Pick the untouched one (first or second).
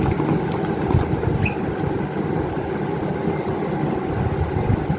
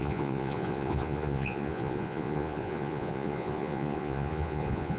first